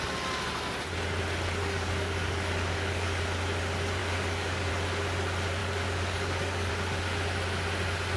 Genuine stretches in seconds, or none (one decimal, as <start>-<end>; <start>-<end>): 0.0-1.6; 3.2-4.0; 4.7-5.6; 6.7-8.2